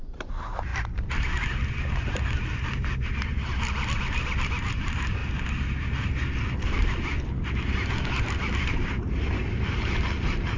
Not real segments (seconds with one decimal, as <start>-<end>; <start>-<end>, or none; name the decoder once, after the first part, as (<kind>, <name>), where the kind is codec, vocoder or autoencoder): 0.0-0.7 (vocoder, BigVGAN v2); 4.5-5.2; 8.5-10.6

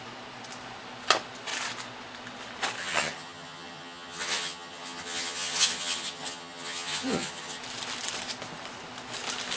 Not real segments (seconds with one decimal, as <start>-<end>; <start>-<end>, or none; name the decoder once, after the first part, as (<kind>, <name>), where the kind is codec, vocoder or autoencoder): 2.8-7.6 (vocoder, HiFi-GAN)

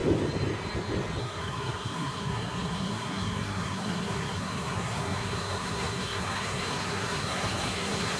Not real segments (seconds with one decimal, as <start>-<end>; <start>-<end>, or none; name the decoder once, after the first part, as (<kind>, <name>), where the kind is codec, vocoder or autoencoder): 1.2-8.2 (codec, SNAC)

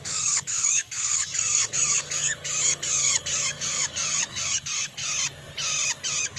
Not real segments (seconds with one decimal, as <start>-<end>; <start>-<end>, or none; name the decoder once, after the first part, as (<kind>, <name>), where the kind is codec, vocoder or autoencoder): 0.0-5.0 (codec, DAC)

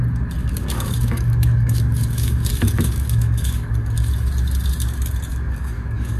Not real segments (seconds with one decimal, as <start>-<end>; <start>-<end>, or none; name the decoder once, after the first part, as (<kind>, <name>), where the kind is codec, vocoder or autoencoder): 0.4-4.1 (codec, DAC); 5.3-6.2